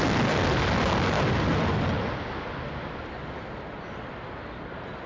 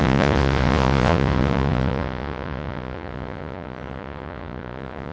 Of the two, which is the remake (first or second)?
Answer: second